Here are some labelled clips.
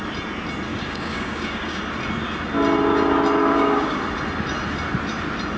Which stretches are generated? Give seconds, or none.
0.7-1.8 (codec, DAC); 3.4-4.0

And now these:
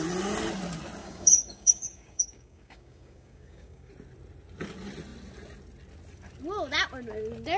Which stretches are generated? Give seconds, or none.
1.0-3.9 (codec, DAC)

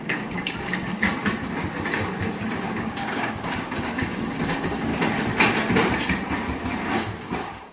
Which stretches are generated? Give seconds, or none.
0.0-0.9 (codec, DAC); 2.7-4.9; 6.9-7.7

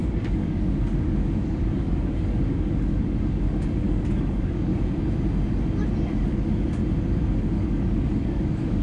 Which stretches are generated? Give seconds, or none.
0.0-4.7 (codec, DAC); 6.0-6.8; 7.4-8.8

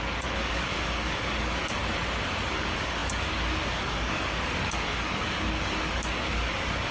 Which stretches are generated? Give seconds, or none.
0.0-1.8 (codec, DAC); 2.5-6.9

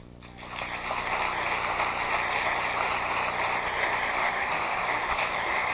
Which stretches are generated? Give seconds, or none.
4.2-5.7 (codec, DAC)

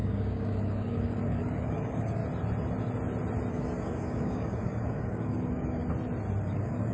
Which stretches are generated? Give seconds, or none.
0.0-2.2 (codec, DAC); 3.5-5.8; 6.4-6.9